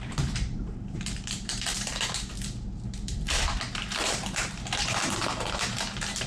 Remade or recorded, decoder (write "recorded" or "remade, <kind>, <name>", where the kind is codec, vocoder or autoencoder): remade, vocoder, BigVGAN v2